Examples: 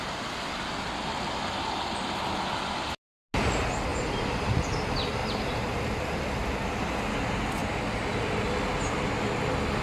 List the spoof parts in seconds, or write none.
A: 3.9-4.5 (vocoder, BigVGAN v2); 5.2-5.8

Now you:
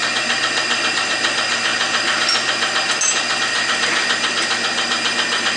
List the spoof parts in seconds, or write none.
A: 0.9-1.7 (vocoder, BigVGAN v2); 3.4-5.6

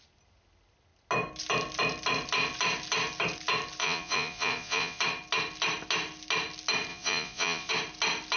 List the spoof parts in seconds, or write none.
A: 3.8-5.0 (vocoder, Vocos); 6.9-7.7

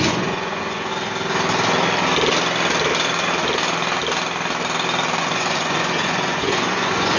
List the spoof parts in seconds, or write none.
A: 0.0-0.9 (vocoder, Vocos); 5.2-7.2